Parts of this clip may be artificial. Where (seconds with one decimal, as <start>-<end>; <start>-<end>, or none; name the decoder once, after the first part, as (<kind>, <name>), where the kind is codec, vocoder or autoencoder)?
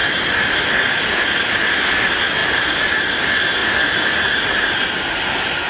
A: 0.0-0.7 (vocoder, BigVGAN v2)